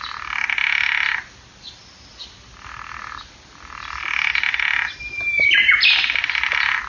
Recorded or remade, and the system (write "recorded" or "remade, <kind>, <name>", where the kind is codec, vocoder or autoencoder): recorded